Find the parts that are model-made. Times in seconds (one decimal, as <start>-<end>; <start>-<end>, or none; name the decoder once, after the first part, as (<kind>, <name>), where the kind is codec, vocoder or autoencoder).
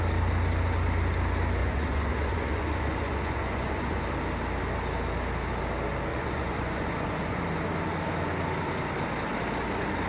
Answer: 1.6-4.0 (vocoder, Vocos); 6.1-7.4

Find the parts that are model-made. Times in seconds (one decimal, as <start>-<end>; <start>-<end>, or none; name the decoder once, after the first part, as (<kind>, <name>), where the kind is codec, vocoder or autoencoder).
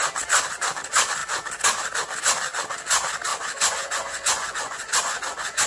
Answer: 3.3-5.7 (vocoder, Vocos)